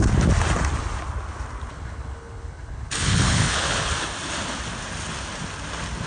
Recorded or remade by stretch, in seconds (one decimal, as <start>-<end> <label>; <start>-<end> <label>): 0.0-1.7 recorded; 1.7-3.9 remade; 3.9-6.1 recorded